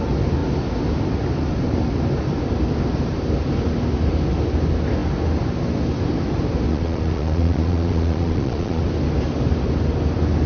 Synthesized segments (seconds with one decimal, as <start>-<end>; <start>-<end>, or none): 6.7-8.8